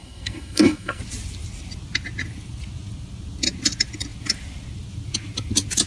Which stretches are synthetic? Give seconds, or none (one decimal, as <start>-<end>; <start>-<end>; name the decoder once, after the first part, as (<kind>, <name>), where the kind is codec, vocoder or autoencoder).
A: 0.0-1.0 (codec, SNAC)